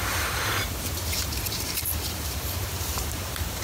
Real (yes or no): no